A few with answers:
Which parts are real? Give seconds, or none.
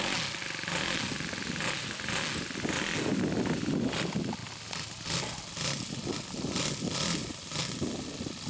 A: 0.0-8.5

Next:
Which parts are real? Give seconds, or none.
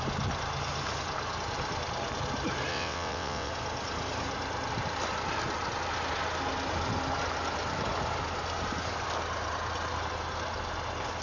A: 0.0-2.7; 3.5-11.2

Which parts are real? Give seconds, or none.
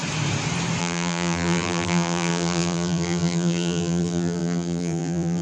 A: 0.0-0.8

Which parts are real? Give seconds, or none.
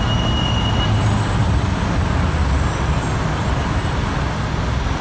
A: 0.0-5.0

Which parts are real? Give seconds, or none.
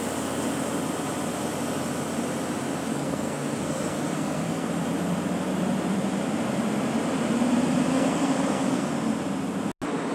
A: 0.0-2.9; 4.7-7.9; 8.9-10.1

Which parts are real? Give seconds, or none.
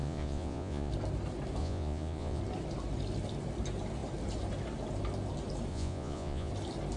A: 0.9-1.6; 2.4-5.7; 6.5-7.0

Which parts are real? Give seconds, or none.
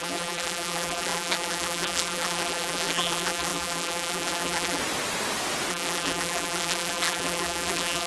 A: 4.8-5.7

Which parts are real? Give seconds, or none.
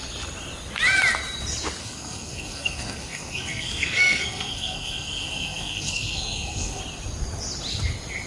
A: 0.0-1.8; 6.8-8.3